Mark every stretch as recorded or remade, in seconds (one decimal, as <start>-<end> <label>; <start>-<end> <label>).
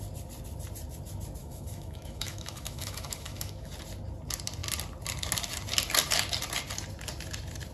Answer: 0.0-1.4 recorded; 1.4-3.7 remade; 3.7-7.7 recorded